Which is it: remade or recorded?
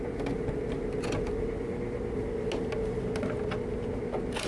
recorded